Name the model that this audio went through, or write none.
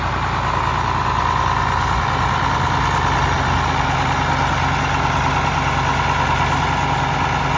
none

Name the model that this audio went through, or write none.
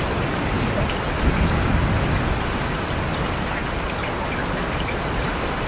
none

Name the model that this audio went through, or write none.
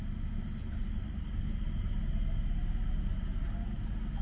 none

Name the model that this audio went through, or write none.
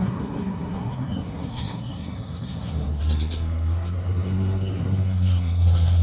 codec, SNAC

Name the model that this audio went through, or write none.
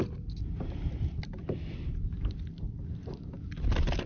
none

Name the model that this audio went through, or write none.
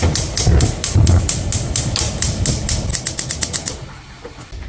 none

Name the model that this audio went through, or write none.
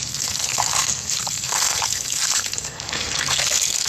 codec, SNAC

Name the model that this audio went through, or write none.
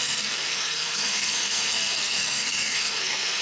codec, SNAC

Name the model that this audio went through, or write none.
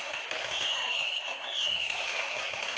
codec, SNAC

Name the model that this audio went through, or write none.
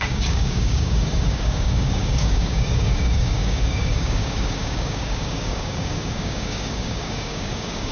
codec, DAC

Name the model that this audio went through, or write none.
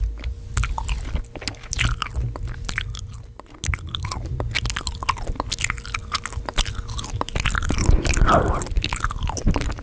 none